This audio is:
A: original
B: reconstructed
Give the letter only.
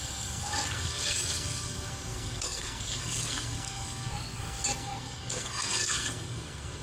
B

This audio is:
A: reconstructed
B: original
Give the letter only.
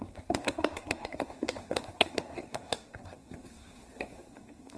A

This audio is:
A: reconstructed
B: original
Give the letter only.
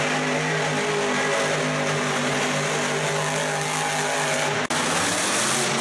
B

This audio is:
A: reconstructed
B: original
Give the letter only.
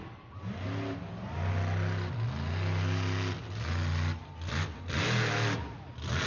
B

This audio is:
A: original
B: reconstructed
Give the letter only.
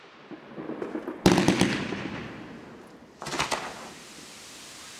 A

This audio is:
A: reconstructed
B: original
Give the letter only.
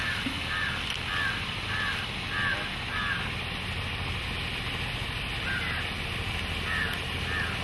B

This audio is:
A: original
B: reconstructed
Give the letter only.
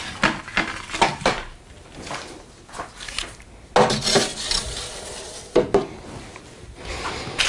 A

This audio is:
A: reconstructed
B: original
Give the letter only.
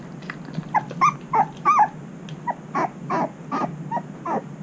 B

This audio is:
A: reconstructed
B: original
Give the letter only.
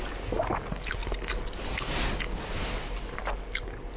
B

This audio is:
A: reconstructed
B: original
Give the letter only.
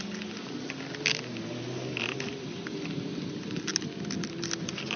B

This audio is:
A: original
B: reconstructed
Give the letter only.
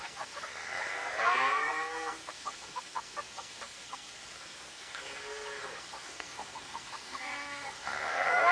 B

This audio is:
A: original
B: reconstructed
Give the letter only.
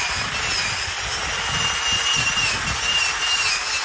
A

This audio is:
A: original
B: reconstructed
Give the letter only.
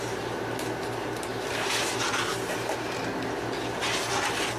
A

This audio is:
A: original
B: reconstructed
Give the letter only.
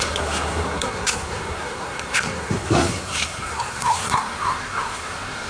B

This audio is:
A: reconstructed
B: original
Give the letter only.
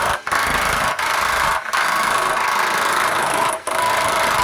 A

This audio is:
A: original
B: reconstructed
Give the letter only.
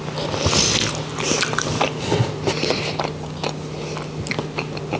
A